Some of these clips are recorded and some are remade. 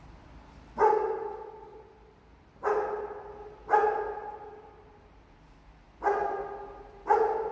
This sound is recorded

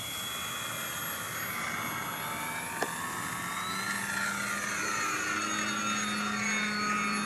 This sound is recorded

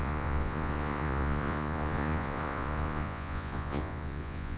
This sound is remade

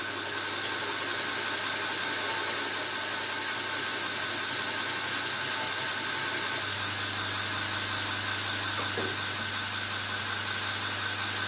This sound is recorded